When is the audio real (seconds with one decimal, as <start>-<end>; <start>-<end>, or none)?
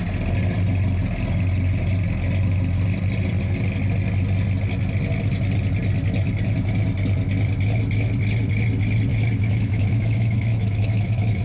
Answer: 0.0-9.1